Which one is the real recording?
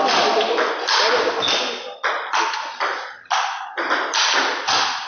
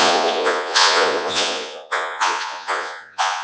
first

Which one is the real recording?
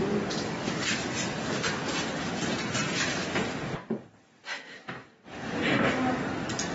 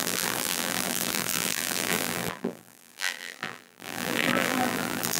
first